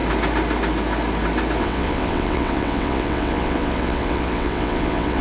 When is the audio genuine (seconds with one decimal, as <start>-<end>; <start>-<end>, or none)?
0.0-1.6